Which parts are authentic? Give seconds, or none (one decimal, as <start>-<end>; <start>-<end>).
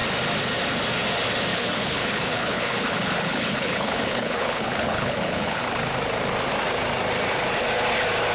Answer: 0.0-1.5; 5.6-8.3